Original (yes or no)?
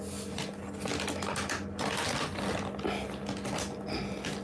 yes